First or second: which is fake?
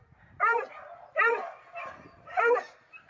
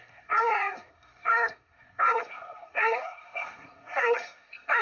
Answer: second